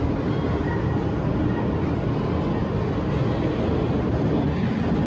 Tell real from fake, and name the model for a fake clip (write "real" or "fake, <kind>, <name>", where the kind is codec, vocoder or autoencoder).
real